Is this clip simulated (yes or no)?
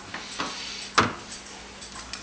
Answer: no